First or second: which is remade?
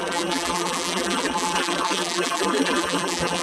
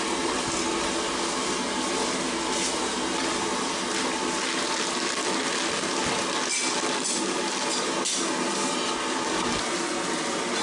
first